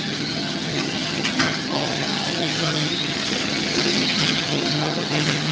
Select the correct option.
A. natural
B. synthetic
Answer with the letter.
B